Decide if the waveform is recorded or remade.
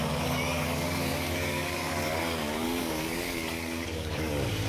remade